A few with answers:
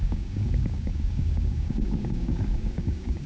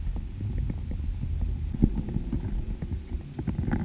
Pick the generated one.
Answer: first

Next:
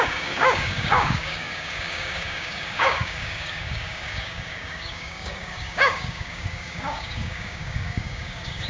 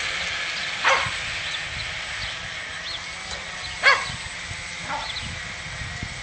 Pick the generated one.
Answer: first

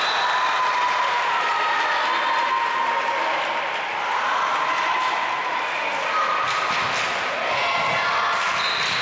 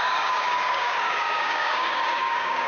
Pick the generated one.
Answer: second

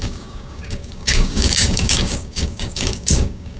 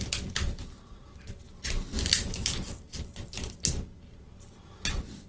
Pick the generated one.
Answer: first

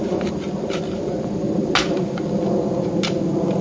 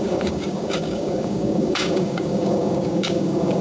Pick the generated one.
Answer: second